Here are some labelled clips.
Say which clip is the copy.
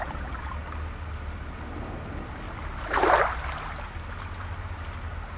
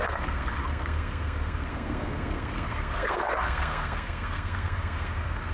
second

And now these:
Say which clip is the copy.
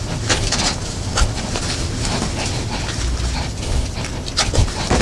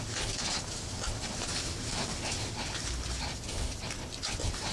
first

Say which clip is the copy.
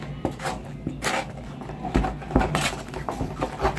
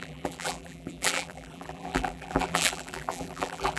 second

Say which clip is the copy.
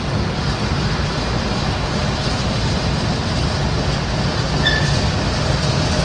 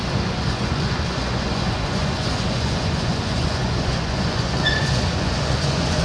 second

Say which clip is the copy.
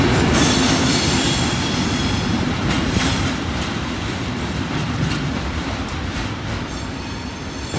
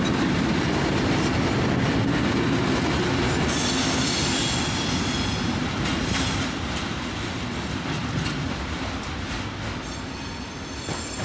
first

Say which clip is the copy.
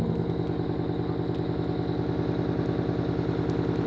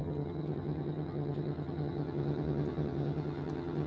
second